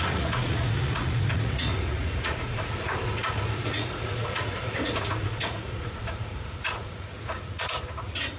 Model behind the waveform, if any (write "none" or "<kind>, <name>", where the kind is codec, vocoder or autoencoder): vocoder, Vocos